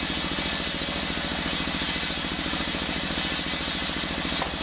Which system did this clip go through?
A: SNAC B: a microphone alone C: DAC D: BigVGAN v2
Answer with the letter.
B